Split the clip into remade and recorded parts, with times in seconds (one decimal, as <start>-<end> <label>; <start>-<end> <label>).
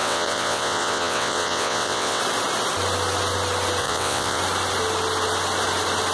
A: 0.0-2.2 remade; 2.2-3.8 recorded; 3.8-4.4 remade; 4.4-6.1 recorded